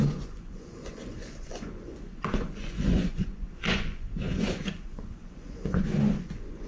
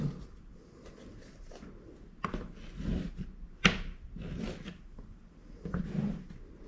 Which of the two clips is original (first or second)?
second